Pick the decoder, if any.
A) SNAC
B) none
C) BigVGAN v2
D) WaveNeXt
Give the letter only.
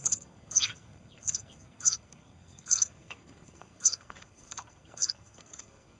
A